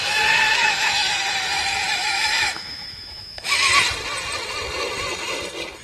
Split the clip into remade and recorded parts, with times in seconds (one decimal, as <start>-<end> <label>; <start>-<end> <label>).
0.0-3.7 remade; 3.7-5.8 recorded